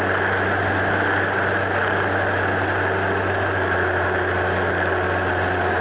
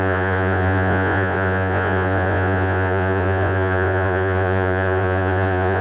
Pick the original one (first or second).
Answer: first